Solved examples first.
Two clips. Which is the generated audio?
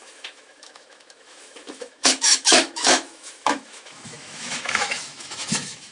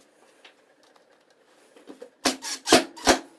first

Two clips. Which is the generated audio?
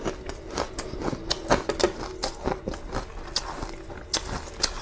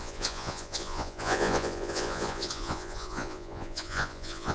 second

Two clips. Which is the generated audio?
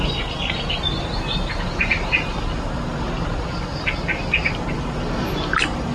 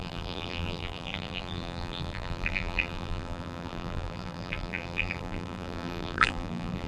second